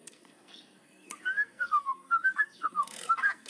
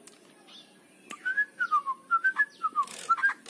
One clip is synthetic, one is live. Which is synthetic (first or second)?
first